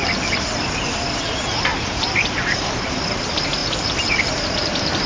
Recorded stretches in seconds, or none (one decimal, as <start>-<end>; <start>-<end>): 0.0-5.1